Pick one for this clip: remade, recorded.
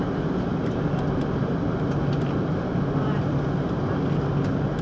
recorded